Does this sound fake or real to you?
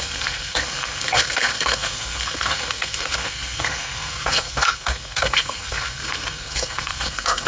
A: fake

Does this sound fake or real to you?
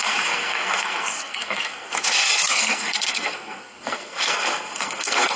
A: fake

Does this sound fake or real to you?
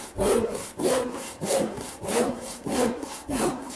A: fake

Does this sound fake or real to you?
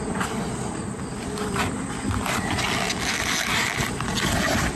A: real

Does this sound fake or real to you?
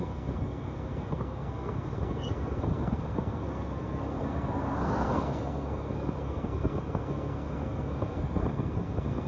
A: fake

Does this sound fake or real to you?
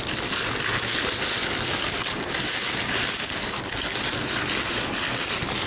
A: real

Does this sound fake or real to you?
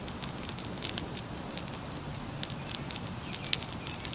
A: real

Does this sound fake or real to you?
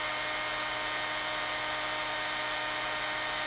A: real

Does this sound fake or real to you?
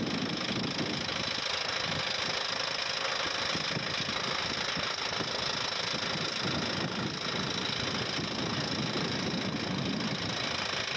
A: real